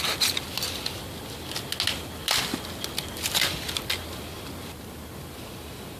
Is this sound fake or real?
real